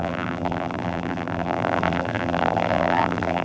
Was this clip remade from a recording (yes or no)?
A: yes